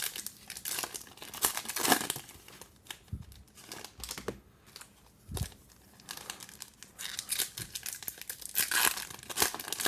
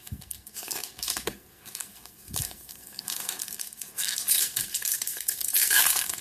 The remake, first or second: second